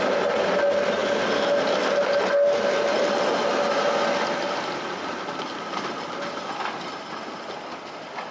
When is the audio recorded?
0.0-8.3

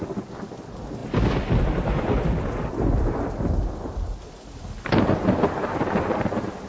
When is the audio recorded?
0.0-6.7

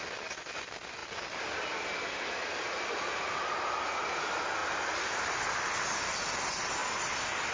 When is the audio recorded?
0.0-7.5

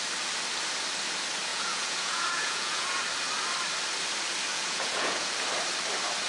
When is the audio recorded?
0.0-1.5; 3.0-4.5; 5.3-6.3

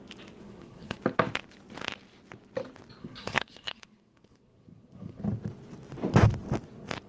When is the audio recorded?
0.0-0.4; 1.0-3.0; 5.2-7.1